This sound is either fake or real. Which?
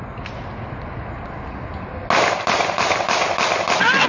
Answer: real